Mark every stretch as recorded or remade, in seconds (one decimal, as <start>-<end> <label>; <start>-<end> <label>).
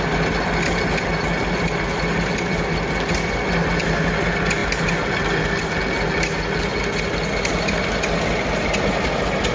0.0-9.5 recorded